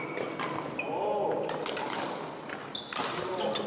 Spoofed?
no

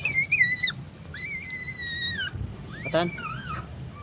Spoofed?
no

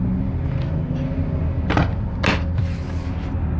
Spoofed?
no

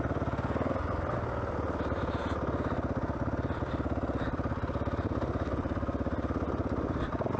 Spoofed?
no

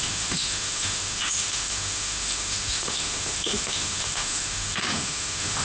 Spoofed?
yes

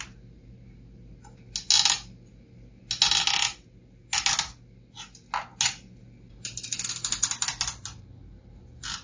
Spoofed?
no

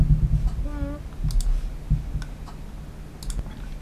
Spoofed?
no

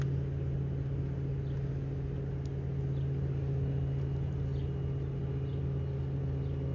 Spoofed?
no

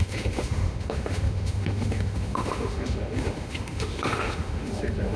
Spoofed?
yes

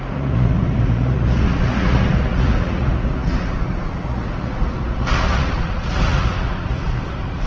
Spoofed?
yes